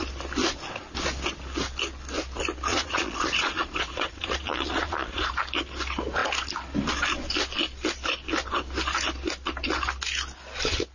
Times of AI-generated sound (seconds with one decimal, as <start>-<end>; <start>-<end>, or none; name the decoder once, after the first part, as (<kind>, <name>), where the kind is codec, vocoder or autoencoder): 2.7-5.3 (vocoder, Vocos)